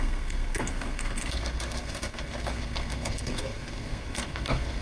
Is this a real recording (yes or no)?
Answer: no